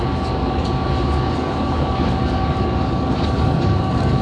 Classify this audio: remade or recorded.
remade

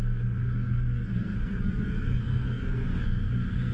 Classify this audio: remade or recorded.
remade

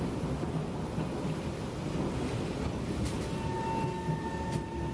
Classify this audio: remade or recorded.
recorded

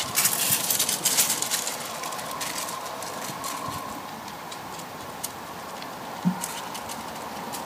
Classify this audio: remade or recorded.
recorded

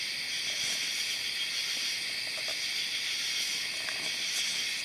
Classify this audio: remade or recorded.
recorded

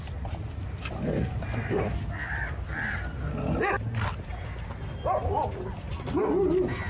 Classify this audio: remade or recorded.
recorded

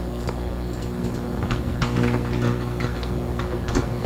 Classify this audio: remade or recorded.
remade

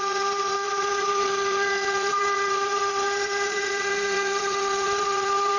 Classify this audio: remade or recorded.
remade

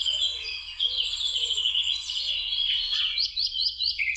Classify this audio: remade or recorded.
remade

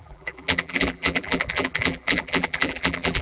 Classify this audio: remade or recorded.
remade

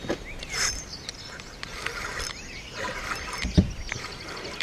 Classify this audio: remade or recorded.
recorded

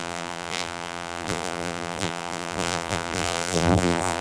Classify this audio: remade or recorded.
remade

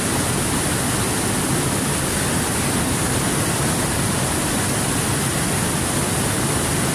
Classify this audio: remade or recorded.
recorded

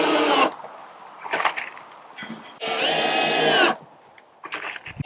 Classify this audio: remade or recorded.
recorded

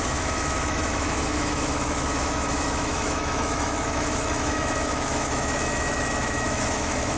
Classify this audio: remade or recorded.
remade